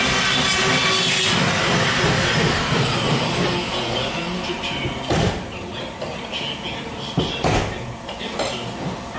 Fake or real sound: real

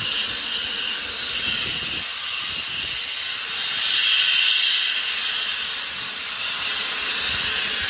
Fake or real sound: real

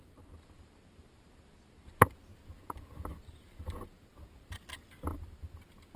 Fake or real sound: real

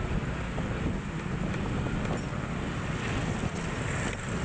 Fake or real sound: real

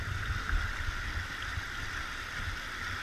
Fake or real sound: real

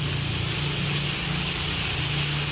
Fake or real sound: real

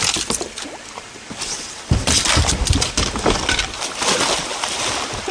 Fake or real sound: real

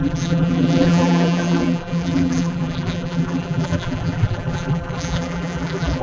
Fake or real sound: fake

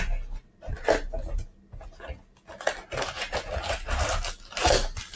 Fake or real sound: real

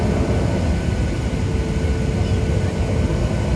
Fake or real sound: real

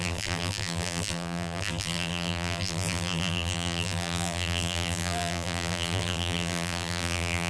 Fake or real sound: fake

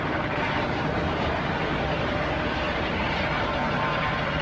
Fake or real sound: fake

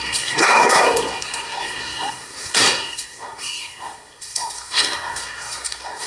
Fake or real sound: fake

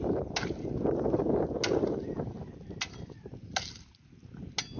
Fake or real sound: real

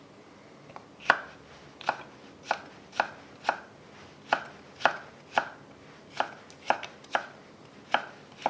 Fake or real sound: real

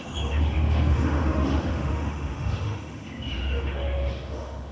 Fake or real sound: fake